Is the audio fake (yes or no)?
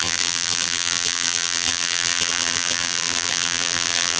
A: yes